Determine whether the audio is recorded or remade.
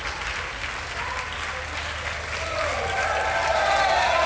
recorded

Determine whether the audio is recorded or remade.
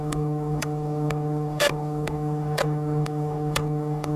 remade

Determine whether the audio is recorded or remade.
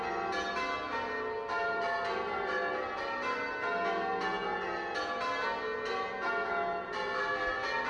recorded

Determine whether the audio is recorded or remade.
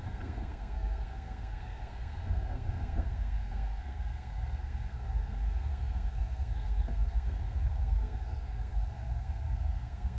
remade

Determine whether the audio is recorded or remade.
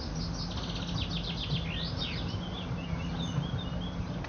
recorded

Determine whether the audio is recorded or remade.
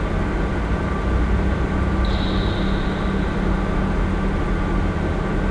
recorded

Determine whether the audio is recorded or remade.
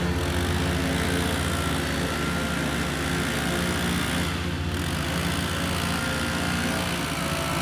recorded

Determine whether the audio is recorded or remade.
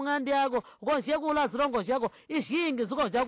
recorded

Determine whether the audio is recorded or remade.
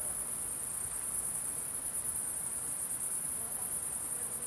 recorded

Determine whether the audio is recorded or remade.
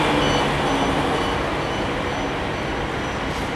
recorded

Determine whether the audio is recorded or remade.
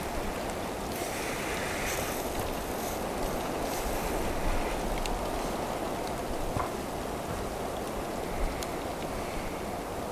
recorded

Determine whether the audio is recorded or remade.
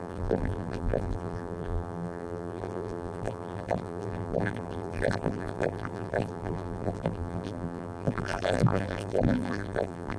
remade